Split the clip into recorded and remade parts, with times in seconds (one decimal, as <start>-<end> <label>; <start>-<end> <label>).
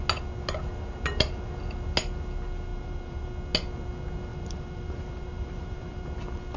0.0-2.7 recorded; 2.7-3.3 remade; 3.3-4.3 recorded; 4.3-6.0 remade; 6.0-6.6 recorded